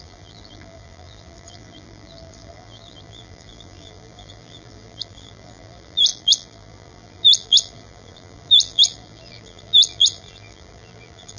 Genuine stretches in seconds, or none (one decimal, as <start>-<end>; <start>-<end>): none